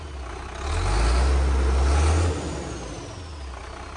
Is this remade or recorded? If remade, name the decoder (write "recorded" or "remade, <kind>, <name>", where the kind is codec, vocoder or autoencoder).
recorded